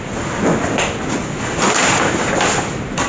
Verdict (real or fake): real